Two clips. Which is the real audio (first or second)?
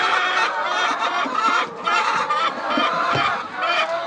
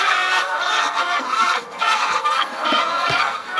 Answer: first